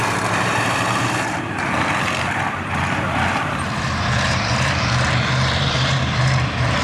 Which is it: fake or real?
fake